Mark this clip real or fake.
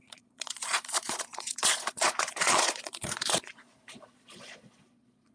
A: fake